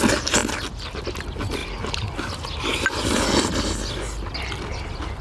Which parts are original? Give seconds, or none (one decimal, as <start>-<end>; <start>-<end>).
0.0-5.2